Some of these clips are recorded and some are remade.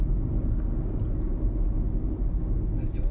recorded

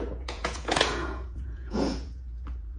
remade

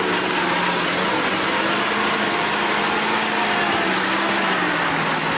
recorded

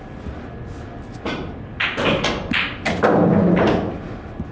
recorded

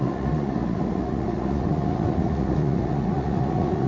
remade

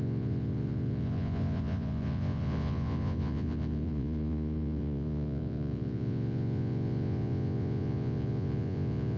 remade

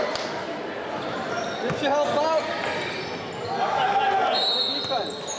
recorded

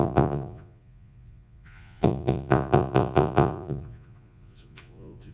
remade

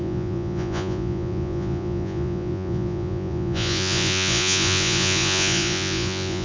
remade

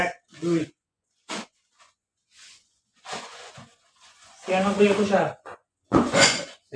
remade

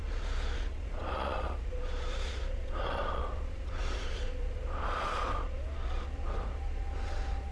remade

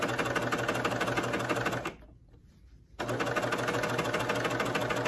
recorded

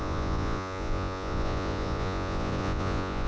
remade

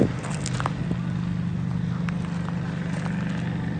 recorded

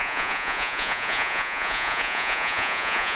remade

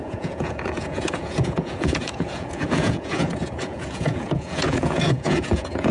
remade